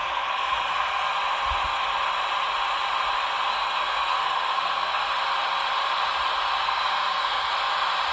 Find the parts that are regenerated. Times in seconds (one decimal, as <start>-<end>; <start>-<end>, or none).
0.0-1.1; 3.5-5.1; 6.6-7.5